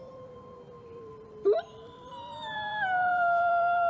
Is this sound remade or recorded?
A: remade